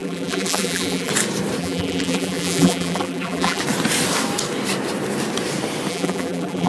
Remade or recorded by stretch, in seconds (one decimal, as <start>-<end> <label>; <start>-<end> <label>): 0.0-1.1 remade; 1.1-1.6 recorded; 1.6-3.6 remade; 3.6-5.9 recorded; 5.9-6.7 remade

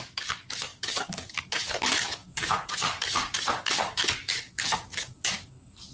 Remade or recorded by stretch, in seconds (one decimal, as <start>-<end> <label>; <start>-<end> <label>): 0.0-5.9 remade